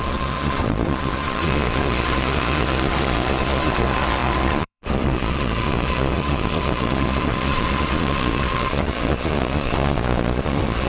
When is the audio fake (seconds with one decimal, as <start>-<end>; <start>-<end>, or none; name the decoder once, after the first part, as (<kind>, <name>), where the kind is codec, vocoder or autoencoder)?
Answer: 0.0-10.9 (vocoder, Vocos)